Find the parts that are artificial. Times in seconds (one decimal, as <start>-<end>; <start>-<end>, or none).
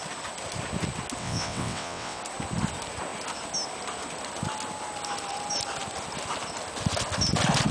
1.2-2.2